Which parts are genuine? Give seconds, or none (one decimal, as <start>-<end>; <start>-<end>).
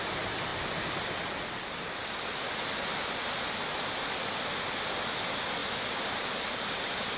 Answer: 0.0-7.2